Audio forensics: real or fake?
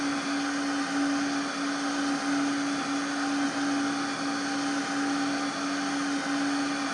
real